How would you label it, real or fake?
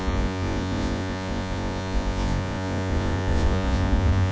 fake